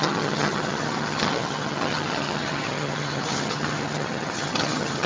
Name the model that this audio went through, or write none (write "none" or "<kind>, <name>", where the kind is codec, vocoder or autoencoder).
vocoder, HiFi-GAN